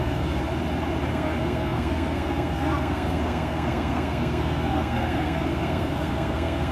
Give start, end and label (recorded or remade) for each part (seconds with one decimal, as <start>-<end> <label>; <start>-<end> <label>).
0.0-0.4 remade; 0.4-1.1 recorded; 1.1-6.7 remade